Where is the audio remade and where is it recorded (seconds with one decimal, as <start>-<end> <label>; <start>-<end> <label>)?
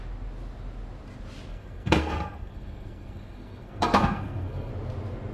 0.0-1.5 recorded; 1.5-4.7 remade; 4.7-5.3 recorded